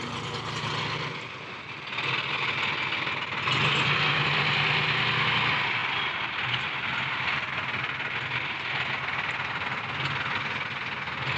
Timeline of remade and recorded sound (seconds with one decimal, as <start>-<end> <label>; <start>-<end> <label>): 0.0-11.4 recorded